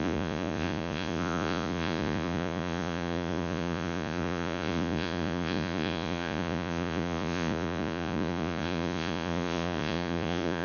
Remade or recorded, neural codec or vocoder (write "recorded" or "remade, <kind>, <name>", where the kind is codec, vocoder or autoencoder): remade, vocoder, Vocos